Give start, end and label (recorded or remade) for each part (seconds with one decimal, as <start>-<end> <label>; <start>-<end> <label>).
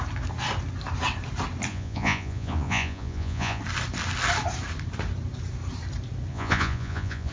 0.0-1.7 recorded; 1.7-3.6 remade; 3.6-6.3 recorded; 6.3-7.3 remade